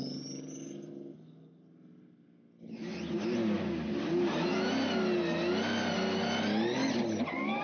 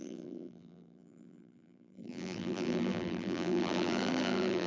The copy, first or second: second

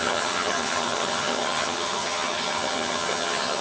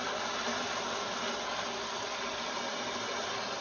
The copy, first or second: first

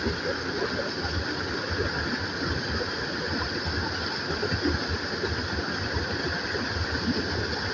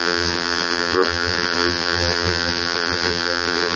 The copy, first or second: second